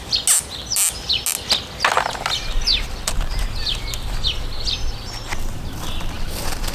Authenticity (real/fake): real